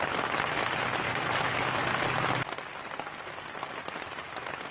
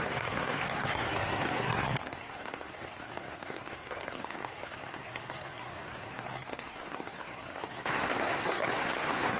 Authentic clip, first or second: first